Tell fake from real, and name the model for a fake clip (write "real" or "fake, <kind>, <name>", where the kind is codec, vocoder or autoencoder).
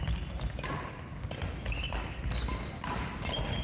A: real